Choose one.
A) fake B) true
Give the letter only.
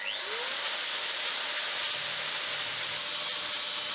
B